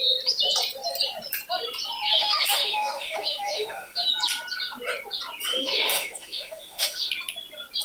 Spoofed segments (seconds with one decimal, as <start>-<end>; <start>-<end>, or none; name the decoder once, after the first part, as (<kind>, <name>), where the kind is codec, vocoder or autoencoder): 2.1-4.1 (autoencoder, DAC-VAE); 5.5-7.1